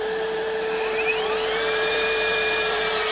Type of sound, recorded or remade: remade